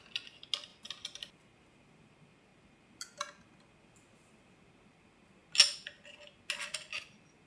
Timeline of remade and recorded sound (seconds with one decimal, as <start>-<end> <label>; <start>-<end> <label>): 0.0-7.5 recorded